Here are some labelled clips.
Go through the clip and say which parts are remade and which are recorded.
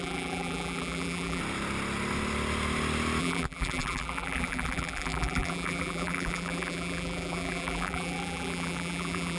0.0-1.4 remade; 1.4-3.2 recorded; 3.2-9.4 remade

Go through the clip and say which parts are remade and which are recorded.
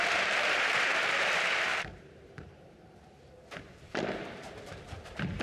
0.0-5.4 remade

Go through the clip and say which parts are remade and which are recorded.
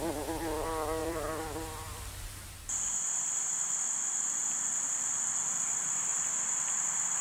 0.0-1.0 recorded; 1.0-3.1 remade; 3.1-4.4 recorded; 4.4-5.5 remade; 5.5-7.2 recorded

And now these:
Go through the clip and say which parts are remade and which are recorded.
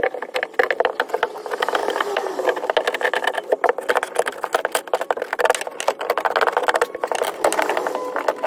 0.0-1.8 recorded; 1.8-2.3 remade; 2.3-8.5 recorded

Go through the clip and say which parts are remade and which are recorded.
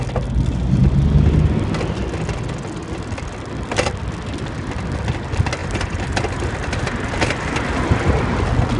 0.0-5.6 recorded; 5.6-7.8 remade; 7.8-8.8 recorded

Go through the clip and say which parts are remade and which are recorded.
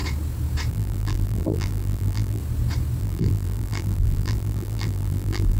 0.0-0.7 recorded; 0.7-2.4 remade; 2.4-3.0 recorded; 3.0-5.6 remade